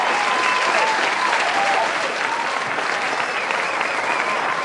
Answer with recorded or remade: recorded